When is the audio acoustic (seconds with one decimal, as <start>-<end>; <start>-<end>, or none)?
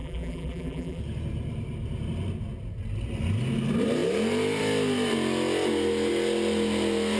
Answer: 1.0-7.2